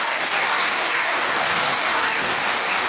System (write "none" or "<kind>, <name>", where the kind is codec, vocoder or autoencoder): codec, DAC